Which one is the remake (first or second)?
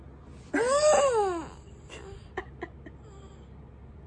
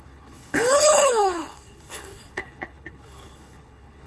second